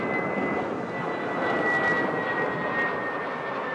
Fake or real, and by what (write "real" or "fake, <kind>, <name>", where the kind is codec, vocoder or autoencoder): real